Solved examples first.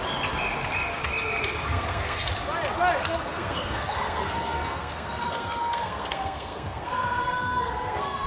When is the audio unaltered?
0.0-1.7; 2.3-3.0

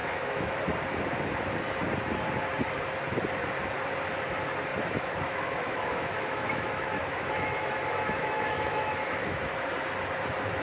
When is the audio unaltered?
0.6-4.7; 9.4-10.6

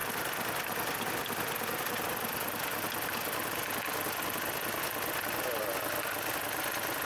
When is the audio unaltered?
0.0-7.0